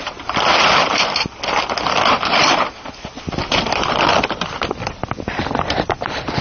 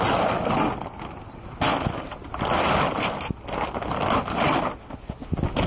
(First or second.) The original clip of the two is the second